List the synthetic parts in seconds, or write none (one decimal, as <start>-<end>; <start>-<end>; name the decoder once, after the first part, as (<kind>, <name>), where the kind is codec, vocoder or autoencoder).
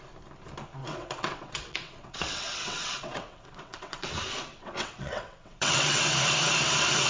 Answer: 0.8-4.1 (vocoder, WaveNeXt); 4.5-6.0